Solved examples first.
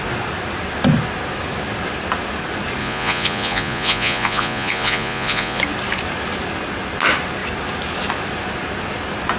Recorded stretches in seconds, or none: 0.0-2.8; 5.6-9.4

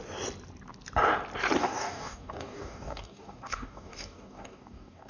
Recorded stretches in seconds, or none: 0.0-1.6

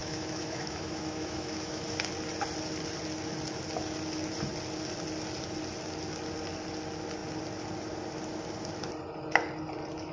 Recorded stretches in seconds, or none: 1.8-10.1